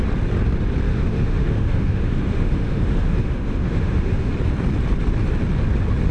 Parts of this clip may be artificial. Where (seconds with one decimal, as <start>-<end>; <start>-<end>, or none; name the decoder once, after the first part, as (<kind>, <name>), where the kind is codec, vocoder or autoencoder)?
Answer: 0.9-4.3 (autoencoder, DAC-VAE)